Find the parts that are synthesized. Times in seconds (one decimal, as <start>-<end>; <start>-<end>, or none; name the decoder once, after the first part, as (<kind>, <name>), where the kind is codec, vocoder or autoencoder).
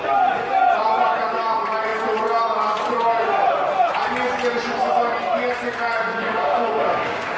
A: 6.1-7.4 (codec, DAC)